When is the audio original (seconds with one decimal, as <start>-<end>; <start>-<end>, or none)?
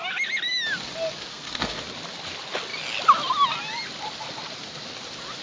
0.0-1.3; 1.8-5.4